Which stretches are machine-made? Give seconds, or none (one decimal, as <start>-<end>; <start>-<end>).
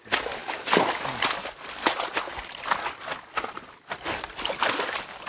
0.4-1.2